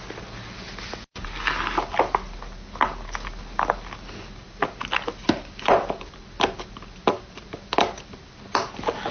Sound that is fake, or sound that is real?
real